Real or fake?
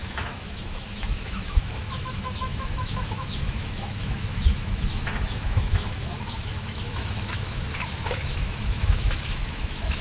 fake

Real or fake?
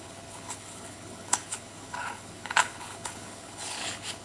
fake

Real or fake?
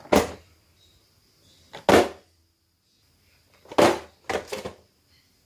real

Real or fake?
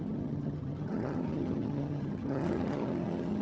fake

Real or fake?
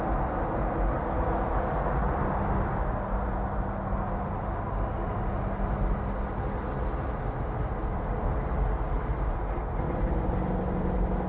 real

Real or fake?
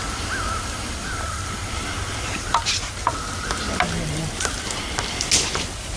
real